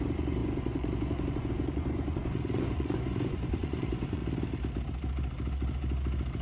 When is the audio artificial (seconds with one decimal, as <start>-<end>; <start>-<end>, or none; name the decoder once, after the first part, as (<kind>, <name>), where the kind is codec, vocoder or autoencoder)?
0.0-4.2 (vocoder, Vocos)